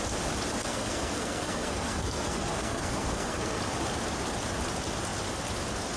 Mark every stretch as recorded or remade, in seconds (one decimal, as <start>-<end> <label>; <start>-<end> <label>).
0.0-0.6 recorded; 0.6-3.6 remade; 3.6-6.0 recorded